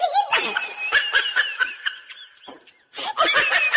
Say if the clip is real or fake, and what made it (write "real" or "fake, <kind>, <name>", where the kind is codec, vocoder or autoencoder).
real